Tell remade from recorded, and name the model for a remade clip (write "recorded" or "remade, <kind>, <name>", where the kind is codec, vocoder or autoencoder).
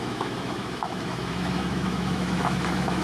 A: remade, autoencoder, DAC-VAE